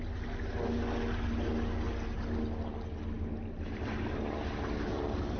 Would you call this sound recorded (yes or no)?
yes